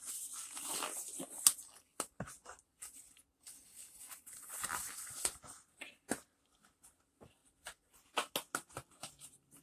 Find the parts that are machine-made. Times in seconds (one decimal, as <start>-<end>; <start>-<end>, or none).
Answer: none